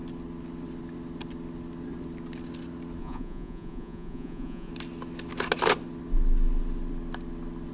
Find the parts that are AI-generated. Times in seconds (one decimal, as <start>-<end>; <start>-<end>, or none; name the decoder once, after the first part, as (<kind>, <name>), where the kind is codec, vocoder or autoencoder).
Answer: 3.0-4.7 (vocoder, Vocos)